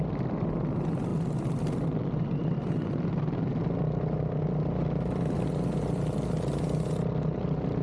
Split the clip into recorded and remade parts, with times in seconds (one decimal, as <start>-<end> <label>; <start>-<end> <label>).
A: 0.0-7.8 recorded